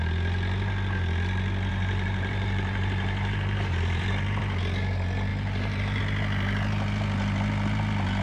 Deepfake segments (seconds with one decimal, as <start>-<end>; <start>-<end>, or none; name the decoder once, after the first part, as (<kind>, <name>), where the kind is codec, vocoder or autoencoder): 1.7-4.4 (vocoder, BigVGAN v2); 5.3-6.0